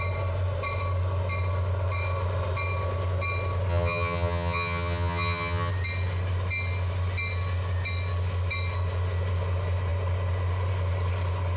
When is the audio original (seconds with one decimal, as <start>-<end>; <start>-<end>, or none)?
0.0-3.7; 5.7-11.6